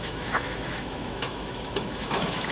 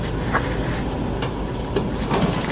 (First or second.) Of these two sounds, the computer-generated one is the first